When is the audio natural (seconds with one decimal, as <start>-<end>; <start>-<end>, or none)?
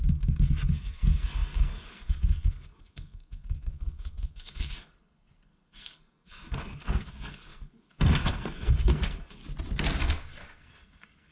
9.4-10.1